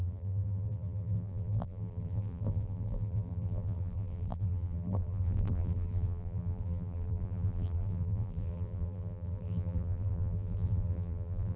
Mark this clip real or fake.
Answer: fake